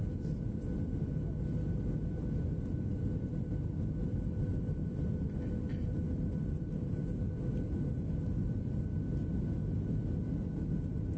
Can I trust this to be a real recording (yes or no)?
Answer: yes